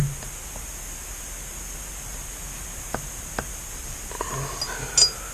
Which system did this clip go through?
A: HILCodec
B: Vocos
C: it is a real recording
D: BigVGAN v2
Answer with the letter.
C